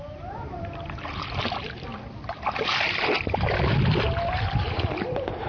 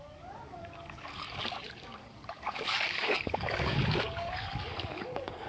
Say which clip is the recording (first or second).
first